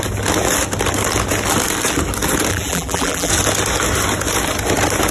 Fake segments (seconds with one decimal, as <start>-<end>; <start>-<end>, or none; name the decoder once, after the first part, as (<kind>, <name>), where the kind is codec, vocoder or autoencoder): 2.5-3.3 (vocoder, BigVGAN v2)